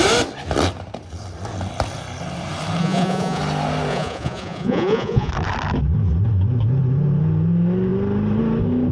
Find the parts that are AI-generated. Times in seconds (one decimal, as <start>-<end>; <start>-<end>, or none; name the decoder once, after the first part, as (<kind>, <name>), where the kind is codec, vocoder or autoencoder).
2.8-3.4 (vocoder, Vocos); 3.9-5.3